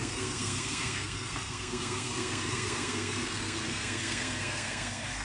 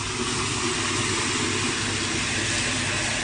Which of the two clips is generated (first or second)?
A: first